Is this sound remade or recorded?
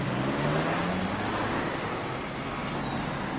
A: recorded